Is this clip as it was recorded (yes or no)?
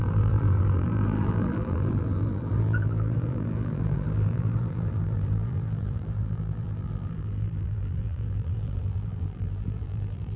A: no